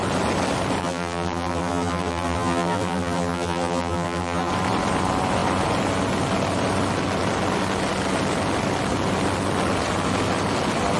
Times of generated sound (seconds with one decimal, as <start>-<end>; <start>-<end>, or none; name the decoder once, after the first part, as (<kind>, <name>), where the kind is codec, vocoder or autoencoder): 0.8-4.5 (vocoder, BigVGAN v2)